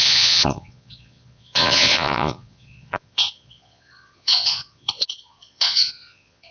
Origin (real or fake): fake